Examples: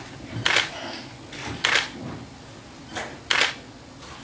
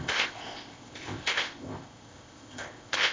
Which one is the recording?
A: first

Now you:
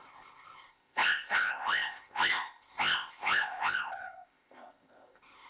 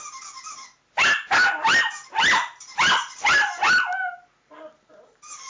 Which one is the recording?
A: second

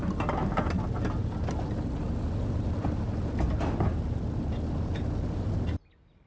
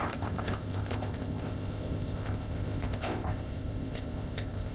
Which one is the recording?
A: first